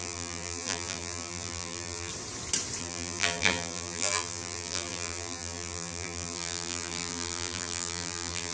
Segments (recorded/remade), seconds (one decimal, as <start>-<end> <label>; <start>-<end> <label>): 0.0-2.1 remade; 2.1-2.8 recorded; 2.8-8.5 remade